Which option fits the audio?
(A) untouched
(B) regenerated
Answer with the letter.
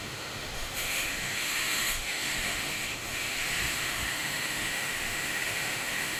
B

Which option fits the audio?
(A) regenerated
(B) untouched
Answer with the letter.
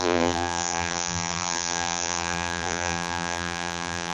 A